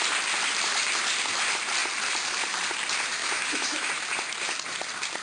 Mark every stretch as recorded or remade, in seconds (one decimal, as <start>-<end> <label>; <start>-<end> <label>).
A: 0.0-3.2 recorded; 3.2-3.9 remade; 3.9-5.2 recorded